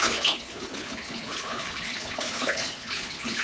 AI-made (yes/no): yes